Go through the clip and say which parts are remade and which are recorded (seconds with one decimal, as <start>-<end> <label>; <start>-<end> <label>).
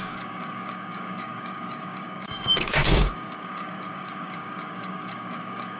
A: 0.0-5.8 remade